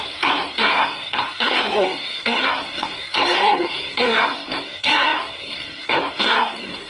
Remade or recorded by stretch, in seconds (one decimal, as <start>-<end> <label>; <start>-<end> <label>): 0.0-6.9 remade